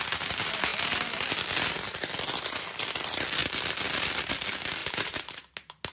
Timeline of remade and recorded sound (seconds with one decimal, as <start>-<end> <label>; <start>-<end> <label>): 0.0-4.8 recorded; 4.8-5.5 remade; 5.5-5.9 recorded

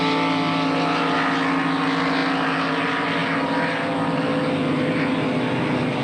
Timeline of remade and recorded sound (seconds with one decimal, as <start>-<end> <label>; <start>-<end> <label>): 0.0-6.0 recorded

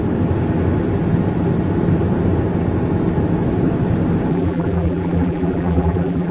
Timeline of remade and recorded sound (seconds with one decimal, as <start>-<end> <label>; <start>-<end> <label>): 0.0-4.3 recorded; 4.3-6.3 remade

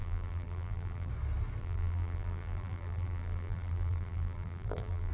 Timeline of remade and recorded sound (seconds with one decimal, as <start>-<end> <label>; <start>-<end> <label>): 0.0-1.1 remade; 1.1-1.6 recorded; 1.6-5.1 remade